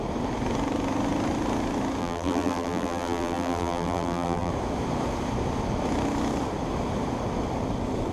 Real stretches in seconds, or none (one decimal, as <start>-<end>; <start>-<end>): 0.0-2.0; 4.5-8.1